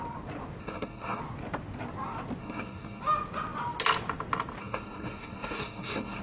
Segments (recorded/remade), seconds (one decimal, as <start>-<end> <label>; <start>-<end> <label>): 0.0-0.6 recorded; 0.6-1.2 remade; 1.2-2.4 recorded; 2.4-3.0 remade; 3.0-4.6 recorded; 4.6-6.2 remade